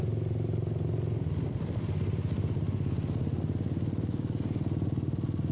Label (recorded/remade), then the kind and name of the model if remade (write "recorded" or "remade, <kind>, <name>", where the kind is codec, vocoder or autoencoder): recorded